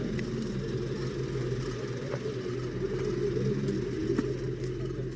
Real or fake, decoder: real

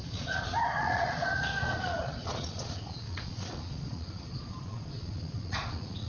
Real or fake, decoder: fake, vocoder, Vocos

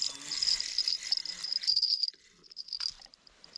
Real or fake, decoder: real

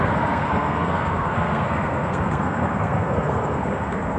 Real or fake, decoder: fake, codec, SNAC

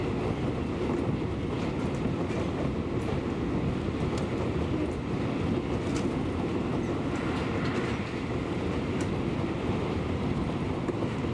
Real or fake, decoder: real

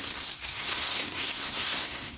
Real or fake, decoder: fake, codec, SNAC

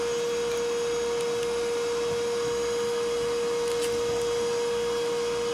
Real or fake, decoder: real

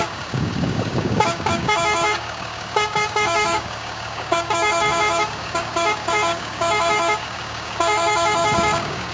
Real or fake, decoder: fake, codec, DAC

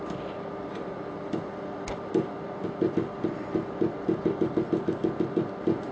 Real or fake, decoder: real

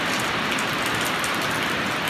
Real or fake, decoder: real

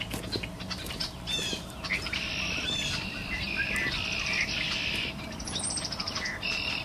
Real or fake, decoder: fake, vocoder, BigVGAN v2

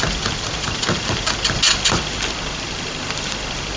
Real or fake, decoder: fake, vocoder, BigVGAN v2